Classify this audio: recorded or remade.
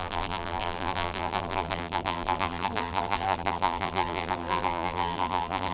remade